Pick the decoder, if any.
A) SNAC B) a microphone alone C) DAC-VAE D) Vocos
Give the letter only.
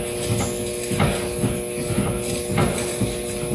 B